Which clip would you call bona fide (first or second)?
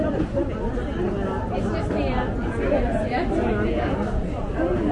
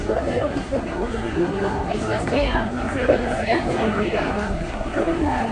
first